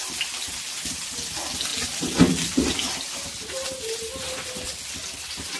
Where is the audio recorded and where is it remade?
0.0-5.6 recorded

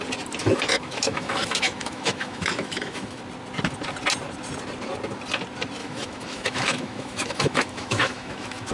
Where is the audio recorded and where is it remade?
0.0-0.4 recorded; 0.4-3.2 remade; 3.2-5.8 recorded; 5.8-8.7 remade

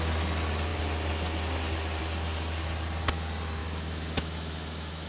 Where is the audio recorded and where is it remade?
0.0-3.6 recorded; 3.6-5.1 remade

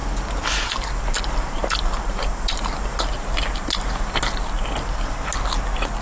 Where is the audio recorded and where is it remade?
0.0-6.0 recorded

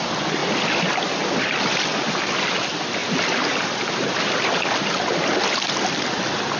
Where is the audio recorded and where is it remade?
0.0-6.6 recorded

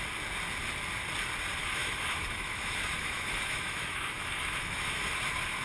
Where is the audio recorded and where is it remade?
0.0-1.6 recorded; 1.6-5.0 remade; 5.0-5.6 recorded